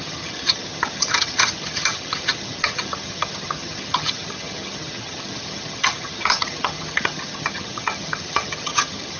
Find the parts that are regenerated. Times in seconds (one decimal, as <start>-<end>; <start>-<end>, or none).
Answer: 0.0-9.2